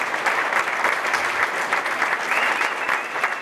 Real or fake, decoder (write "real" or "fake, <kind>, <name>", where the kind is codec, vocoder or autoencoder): real